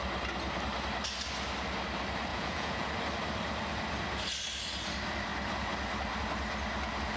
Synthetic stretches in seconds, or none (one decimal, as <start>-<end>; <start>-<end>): 2.3-2.9